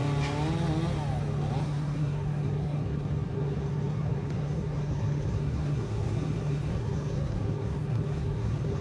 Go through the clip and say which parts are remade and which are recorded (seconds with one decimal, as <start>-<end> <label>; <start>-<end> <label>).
0.0-1.6 recorded; 1.6-8.8 remade